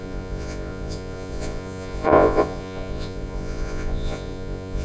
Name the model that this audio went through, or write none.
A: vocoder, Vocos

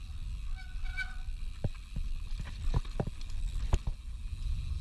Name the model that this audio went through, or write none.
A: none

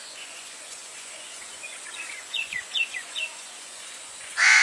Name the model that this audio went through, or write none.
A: vocoder, Vocos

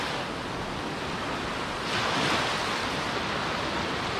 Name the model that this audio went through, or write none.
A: none